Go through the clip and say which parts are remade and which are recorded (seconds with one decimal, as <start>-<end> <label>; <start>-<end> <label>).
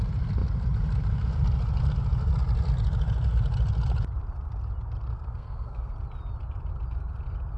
0.0-5.1 recorded; 5.1-5.9 remade; 5.9-7.6 recorded